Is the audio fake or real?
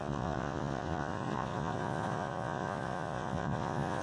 fake